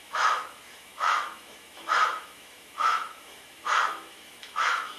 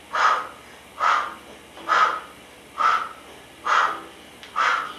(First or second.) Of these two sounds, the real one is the second